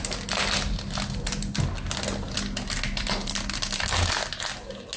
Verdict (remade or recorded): recorded